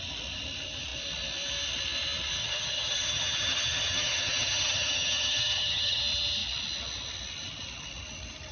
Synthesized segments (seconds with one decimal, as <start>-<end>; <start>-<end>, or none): 2.4-6.0